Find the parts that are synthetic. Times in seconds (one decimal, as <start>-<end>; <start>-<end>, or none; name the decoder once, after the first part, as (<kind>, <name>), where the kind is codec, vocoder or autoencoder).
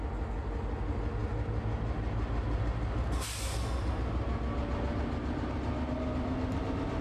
none